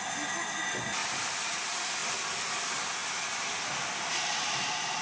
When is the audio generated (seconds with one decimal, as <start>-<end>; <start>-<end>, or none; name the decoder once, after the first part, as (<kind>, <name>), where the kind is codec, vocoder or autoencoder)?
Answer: 1.0-1.6 (vocoder, BigVGAN v2)